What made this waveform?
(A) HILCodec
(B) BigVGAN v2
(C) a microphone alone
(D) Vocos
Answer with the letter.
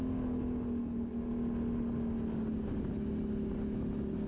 C